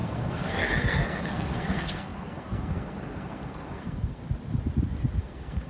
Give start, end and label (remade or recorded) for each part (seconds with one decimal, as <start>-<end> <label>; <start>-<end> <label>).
0.0-4.2 remade; 4.2-5.2 recorded; 5.2-5.7 remade